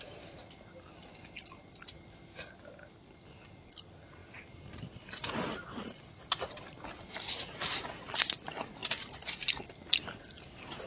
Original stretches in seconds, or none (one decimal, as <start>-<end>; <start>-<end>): 0.0-8.8; 9.3-10.9